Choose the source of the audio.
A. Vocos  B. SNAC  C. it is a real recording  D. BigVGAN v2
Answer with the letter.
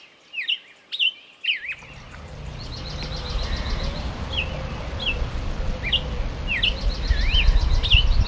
C